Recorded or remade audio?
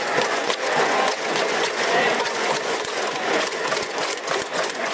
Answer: remade